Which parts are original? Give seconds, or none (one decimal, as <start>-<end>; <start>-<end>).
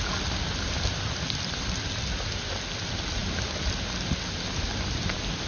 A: 0.0-5.5